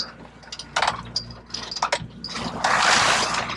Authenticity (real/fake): real